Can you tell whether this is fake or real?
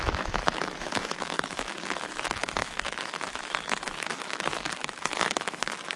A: fake